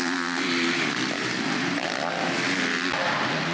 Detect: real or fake real